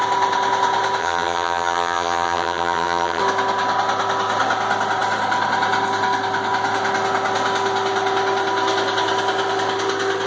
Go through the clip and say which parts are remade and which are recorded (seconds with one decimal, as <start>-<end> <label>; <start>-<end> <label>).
0.0-1.0 recorded; 1.0-3.2 remade; 3.2-10.3 recorded